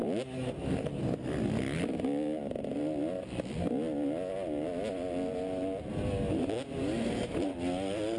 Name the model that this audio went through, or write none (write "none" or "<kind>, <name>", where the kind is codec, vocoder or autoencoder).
none